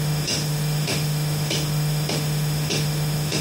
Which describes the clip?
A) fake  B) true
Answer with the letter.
A